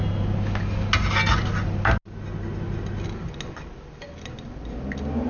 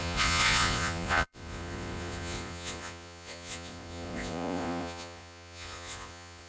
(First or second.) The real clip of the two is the first